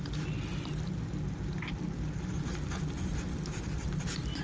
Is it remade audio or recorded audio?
recorded